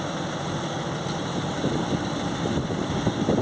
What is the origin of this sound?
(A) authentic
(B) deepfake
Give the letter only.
A